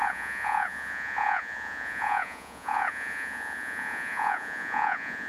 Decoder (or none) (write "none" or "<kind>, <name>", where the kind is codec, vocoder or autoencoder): vocoder, Vocos